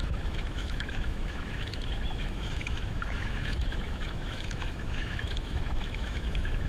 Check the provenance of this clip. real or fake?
fake